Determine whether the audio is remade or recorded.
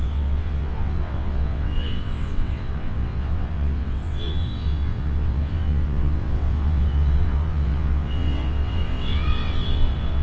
remade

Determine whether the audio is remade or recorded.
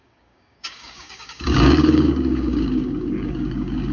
remade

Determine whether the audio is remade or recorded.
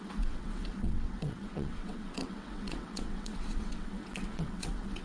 remade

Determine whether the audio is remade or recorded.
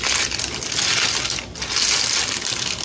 recorded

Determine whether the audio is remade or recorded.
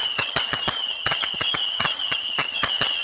remade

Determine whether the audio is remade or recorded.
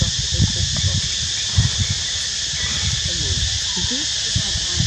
recorded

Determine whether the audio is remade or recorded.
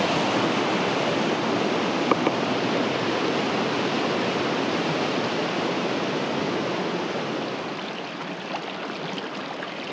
recorded